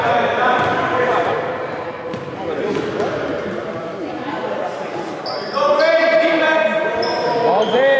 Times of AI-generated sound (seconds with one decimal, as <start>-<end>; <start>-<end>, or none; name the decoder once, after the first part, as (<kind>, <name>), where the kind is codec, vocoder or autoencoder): 0.0-8.0 (vocoder, BigVGAN v2)